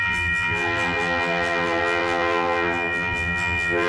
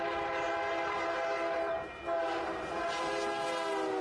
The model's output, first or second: first